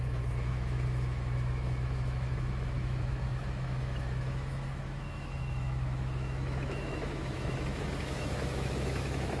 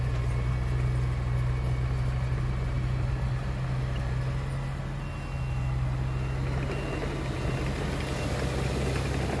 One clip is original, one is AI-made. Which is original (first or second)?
second